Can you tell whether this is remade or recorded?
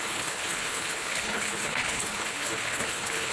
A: remade